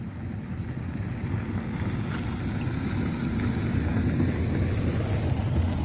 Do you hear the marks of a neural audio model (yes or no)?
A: no